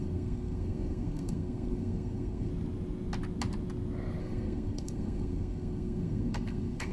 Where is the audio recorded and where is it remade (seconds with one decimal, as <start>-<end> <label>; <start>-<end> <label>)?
0.0-2.5 remade; 2.5-4.2 recorded; 4.2-6.9 remade